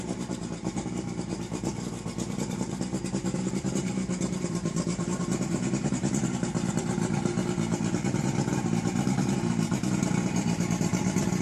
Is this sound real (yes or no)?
no